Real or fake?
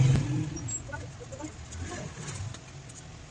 real